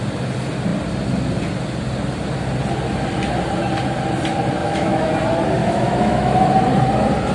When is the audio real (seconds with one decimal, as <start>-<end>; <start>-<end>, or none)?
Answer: 0.0-4.6; 5.1-5.6; 6.5-7.3